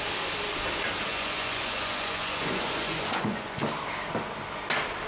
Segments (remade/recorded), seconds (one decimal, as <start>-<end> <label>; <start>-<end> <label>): 0.0-1.1 recorded; 1.1-3.6 remade; 3.6-5.1 recorded